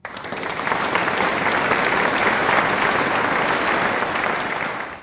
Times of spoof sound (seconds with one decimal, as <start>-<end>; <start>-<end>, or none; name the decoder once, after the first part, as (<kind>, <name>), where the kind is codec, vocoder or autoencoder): 0.0-2.5 (vocoder, BigVGAN v2)